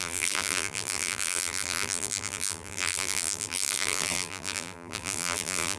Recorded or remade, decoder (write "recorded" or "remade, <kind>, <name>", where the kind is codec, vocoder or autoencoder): remade, vocoder, BigVGAN v2